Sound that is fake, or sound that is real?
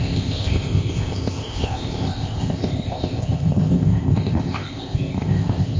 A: fake